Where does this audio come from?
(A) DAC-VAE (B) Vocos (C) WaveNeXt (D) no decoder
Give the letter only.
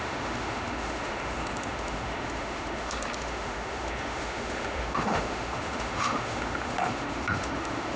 A